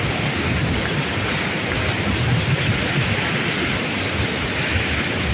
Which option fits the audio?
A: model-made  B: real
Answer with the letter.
B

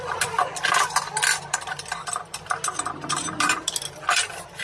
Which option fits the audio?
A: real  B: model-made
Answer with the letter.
A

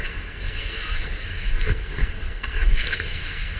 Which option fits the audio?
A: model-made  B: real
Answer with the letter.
A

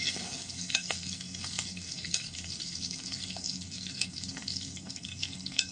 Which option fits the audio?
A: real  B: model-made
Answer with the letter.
B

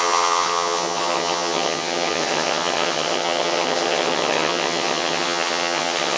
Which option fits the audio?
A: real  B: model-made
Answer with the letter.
B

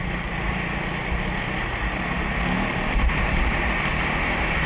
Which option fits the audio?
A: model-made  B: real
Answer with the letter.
B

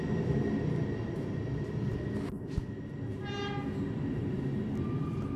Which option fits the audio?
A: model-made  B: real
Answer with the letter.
B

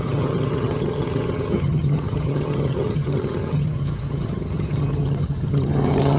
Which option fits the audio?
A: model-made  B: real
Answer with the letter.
A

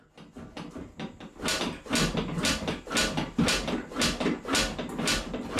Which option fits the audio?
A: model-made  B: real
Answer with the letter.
B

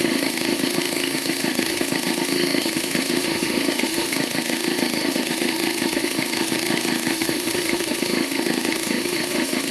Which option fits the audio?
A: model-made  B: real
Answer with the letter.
A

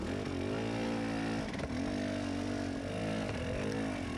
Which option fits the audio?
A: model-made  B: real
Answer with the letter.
B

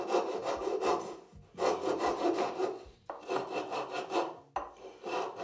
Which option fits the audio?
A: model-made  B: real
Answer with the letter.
B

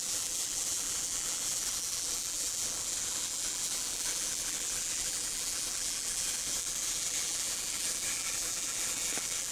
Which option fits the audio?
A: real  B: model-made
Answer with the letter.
B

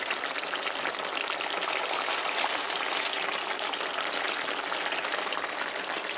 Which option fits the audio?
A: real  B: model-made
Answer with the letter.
A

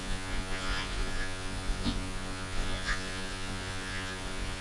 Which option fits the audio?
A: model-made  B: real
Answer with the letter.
A